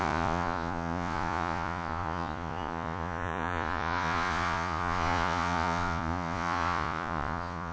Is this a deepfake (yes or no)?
yes